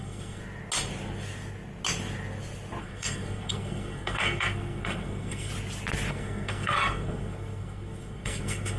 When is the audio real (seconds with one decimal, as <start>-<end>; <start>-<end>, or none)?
0.4-2.8; 5.5-6.1